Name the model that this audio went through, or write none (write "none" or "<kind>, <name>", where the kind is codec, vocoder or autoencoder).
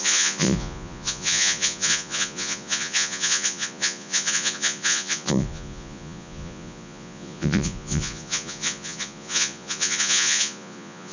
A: vocoder, Vocos